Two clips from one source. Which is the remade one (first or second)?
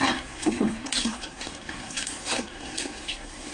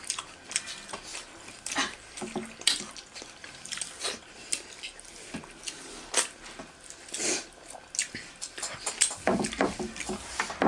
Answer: first